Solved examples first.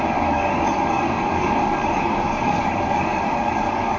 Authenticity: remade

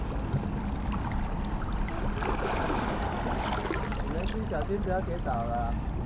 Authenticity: recorded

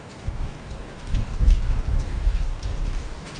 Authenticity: remade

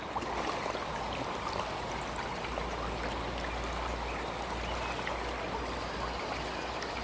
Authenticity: recorded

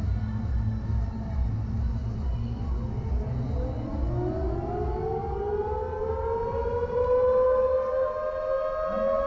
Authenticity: recorded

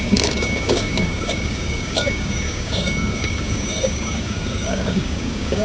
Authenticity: remade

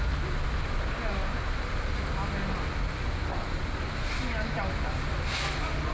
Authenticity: recorded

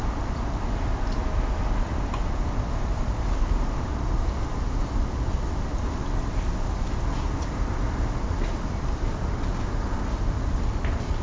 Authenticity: recorded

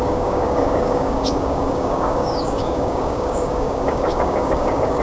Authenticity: remade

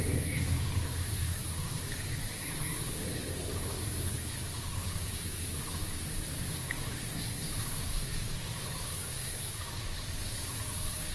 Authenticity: remade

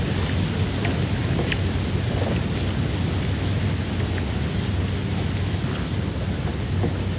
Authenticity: recorded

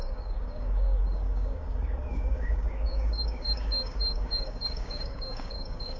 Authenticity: remade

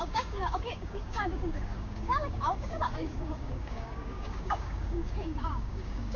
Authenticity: remade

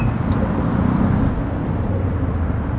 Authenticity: recorded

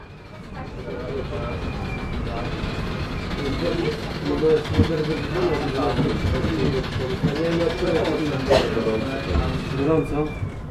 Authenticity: recorded